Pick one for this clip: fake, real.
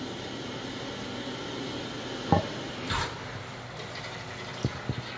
real